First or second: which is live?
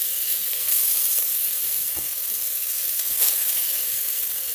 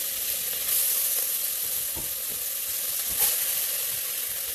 second